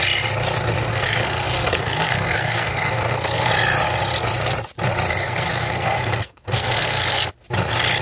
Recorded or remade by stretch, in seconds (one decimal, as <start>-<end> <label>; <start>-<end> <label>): 0.0-0.9 recorded; 0.9-3.5 remade; 3.5-5.2 recorded; 5.2-7.3 remade; 7.3-8.0 recorded